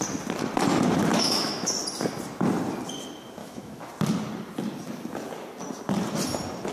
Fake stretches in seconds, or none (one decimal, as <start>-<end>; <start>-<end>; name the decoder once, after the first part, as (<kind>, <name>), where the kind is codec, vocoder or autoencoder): 1.1-1.7 (autoencoder, DAC-VAE); 3.4-3.9